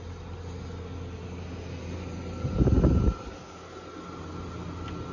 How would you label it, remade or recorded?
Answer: recorded